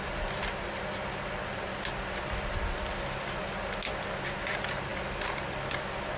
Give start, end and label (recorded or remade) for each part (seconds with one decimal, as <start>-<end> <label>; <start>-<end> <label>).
0.0-6.2 recorded